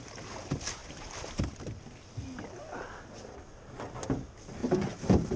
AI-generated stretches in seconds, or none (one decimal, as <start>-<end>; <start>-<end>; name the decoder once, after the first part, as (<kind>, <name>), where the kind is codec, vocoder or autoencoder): 0.8-1.3 (vocoder, BigVGAN v2)

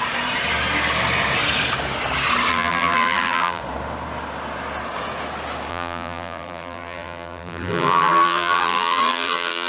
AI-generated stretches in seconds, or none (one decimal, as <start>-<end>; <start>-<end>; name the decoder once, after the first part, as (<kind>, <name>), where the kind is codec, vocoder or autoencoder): 2.5-3.6 (vocoder, BigVGAN v2); 5.7-9.7

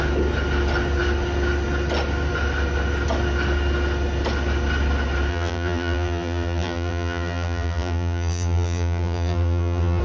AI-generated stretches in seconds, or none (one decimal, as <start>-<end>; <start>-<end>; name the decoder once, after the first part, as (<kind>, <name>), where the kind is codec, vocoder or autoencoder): 5.3-10.0 (vocoder, BigVGAN v2)

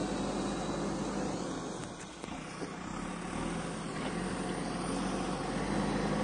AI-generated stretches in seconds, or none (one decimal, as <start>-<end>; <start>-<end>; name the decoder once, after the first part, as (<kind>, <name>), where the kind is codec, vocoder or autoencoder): none

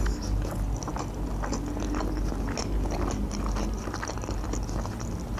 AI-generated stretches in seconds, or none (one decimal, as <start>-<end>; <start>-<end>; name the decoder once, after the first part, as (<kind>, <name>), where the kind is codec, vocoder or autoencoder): none